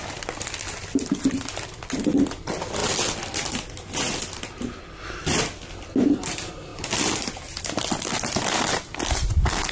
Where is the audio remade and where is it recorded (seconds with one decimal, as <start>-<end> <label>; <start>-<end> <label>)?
0.0-9.7 recorded